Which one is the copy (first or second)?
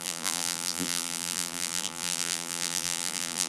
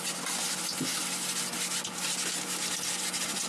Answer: first